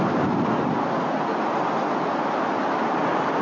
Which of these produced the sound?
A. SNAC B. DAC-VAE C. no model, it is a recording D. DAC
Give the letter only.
C